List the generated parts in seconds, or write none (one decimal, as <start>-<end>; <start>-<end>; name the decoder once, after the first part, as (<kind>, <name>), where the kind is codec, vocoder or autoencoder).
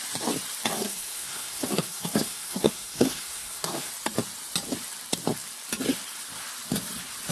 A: 0.7-3.9 (codec, SNAC)